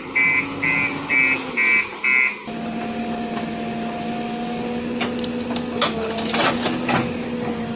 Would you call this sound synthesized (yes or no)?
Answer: no